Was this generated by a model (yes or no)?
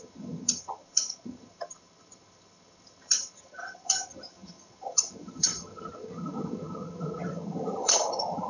yes